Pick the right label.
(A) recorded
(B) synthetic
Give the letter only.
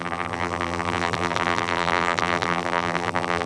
B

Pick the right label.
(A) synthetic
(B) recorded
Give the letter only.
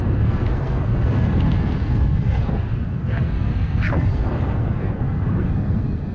A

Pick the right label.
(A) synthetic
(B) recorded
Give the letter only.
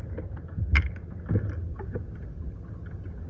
B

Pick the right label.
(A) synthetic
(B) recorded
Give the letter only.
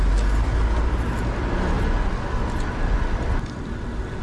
B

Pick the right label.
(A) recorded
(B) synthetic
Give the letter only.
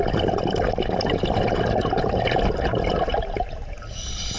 A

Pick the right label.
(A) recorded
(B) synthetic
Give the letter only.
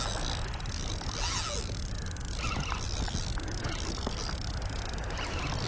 A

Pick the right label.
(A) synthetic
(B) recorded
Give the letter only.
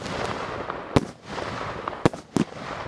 B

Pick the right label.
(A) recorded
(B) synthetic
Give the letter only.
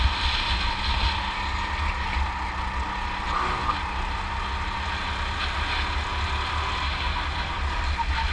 A